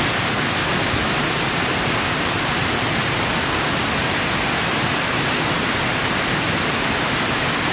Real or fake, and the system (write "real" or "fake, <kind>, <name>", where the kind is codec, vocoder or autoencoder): real